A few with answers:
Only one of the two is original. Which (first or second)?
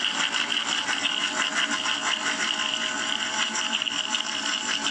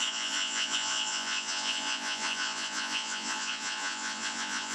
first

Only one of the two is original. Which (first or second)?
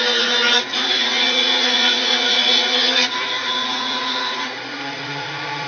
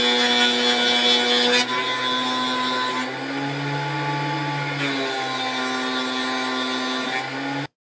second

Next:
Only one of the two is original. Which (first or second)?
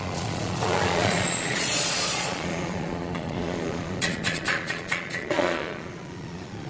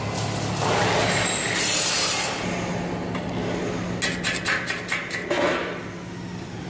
second